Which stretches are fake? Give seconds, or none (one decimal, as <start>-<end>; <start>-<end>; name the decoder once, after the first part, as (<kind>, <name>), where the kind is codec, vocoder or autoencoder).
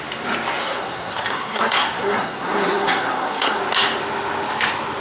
0.6-3.6 (codec, SNAC)